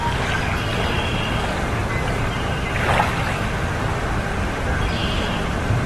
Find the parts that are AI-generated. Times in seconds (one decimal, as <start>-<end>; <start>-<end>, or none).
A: none